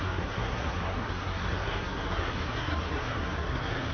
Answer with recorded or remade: remade